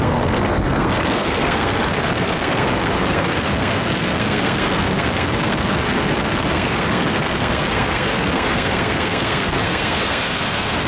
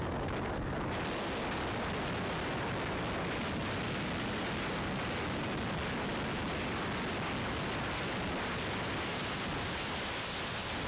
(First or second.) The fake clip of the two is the first